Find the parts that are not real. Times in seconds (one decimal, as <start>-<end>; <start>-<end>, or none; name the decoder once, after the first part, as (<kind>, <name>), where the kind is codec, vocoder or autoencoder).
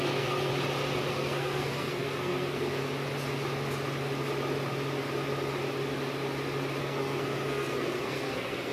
0.0-0.5 (codec, SNAC); 1.1-2.8; 6.8-8.7